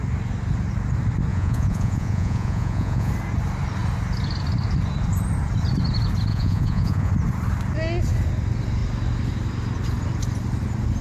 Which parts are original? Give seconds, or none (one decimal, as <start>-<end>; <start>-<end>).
0.0-1.3; 3.1-6.3; 7.1-11.0